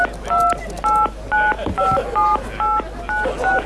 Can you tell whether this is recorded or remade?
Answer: recorded